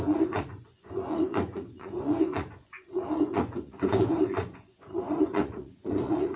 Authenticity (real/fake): fake